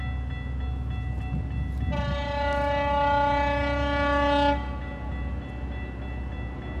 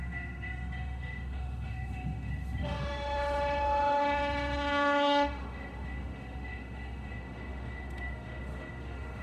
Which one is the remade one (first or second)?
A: second